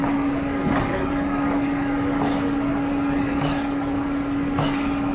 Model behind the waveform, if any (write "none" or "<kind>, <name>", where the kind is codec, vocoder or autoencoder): codec, DAC